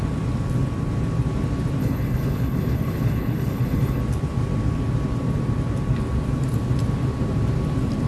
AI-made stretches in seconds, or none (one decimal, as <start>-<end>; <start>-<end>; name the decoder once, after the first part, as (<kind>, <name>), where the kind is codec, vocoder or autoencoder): 1.8-4.0 (codec, HILCodec)